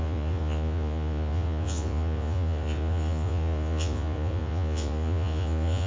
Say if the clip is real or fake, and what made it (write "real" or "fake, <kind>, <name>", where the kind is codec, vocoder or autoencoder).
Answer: fake, vocoder, Vocos